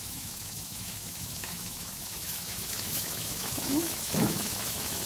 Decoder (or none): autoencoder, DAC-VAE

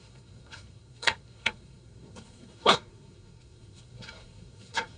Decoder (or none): codec, SNAC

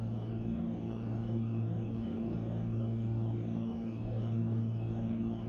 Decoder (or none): codec, DAC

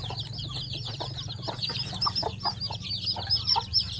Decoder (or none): vocoder, BigVGAN v2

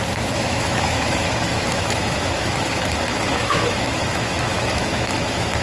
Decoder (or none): autoencoder, DAC-VAE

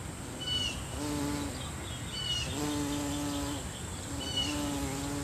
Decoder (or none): none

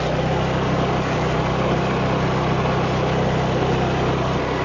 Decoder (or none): none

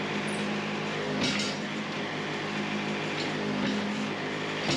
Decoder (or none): none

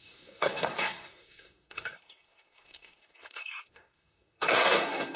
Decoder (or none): codec, SNAC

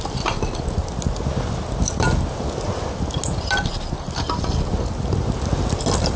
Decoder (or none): none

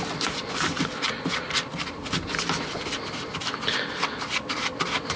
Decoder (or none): none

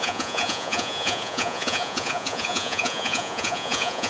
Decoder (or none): vocoder, Vocos